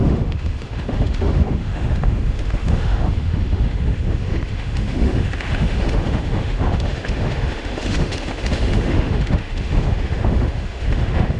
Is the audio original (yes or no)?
no